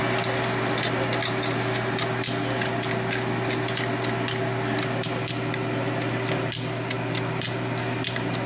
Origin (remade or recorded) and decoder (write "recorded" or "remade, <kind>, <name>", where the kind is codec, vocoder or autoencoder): recorded